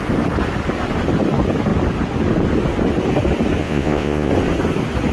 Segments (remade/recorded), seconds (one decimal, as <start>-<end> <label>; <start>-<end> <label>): 0.0-3.6 recorded; 3.6-4.3 remade; 4.3-5.1 recorded